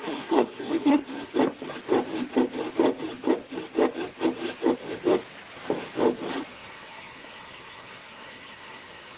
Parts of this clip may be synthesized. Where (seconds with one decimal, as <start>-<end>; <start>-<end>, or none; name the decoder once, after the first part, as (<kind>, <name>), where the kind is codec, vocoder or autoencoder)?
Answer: 0.0-1.3 (codec, SNAC); 6.5-9.2